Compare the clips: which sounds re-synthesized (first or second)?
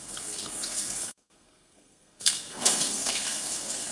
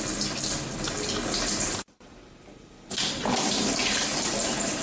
first